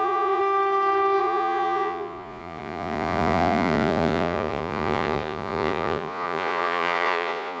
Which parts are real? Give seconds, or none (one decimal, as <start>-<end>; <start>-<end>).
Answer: 0.4-1.2